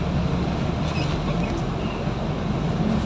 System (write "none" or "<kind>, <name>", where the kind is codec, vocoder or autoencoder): none